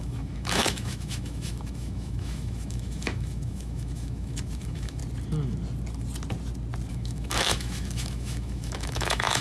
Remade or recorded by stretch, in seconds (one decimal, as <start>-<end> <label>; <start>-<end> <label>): 0.0-5.0 remade; 5.0-6.9 recorded; 6.9-9.4 remade